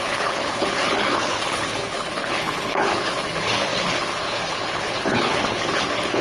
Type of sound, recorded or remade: remade